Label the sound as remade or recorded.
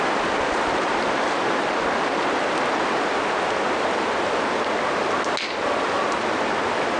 recorded